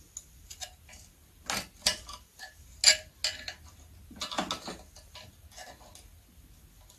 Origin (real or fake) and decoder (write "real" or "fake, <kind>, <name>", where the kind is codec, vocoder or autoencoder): real